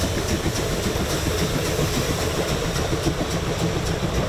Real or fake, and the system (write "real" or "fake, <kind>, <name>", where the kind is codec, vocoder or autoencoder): real